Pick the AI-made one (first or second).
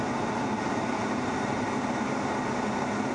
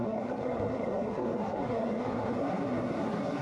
second